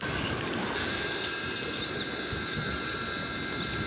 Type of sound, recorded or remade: recorded